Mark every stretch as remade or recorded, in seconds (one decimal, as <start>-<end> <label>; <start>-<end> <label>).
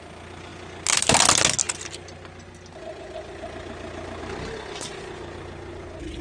0.0-6.2 recorded